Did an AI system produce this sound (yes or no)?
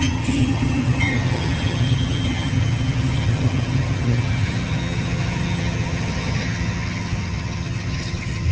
yes